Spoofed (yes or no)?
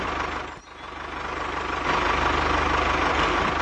no